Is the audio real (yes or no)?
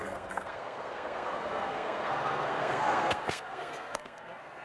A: no